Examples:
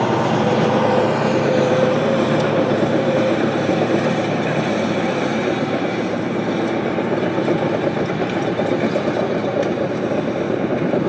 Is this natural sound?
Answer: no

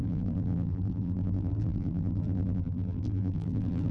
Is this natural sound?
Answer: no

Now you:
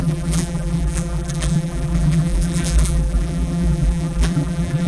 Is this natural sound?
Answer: no